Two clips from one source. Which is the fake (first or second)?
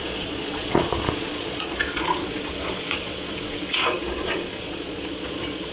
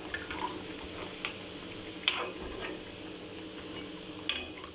first